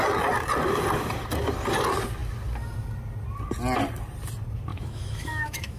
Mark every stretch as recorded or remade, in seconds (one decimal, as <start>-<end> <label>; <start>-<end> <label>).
0.0-4.7 recorded; 4.7-5.8 remade